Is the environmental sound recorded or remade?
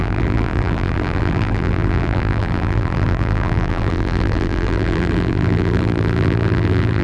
remade